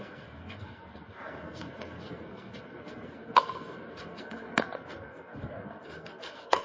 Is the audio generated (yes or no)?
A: yes